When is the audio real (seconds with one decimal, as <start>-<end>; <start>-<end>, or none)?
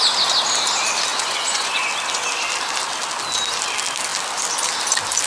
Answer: 0.0-1.1; 1.9-5.3